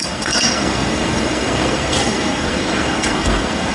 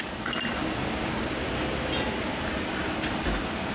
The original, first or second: second